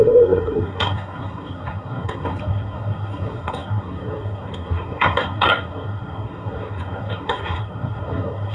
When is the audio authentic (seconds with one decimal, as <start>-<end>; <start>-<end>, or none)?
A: none